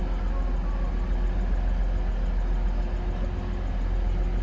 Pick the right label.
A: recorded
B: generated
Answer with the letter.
A